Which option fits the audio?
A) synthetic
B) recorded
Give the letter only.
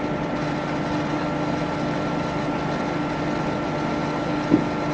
B